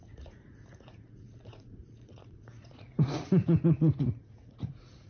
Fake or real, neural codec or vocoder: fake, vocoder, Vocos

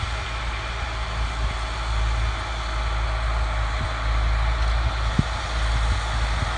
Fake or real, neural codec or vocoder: real